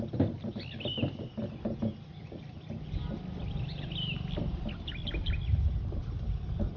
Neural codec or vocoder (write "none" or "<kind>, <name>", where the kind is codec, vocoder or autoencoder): none